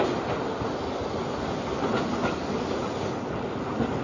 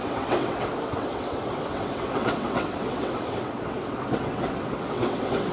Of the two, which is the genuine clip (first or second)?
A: first